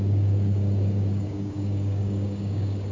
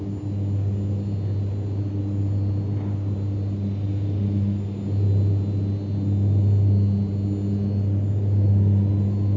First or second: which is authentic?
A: second